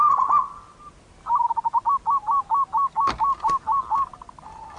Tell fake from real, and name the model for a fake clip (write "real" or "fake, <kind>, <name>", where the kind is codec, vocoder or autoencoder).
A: real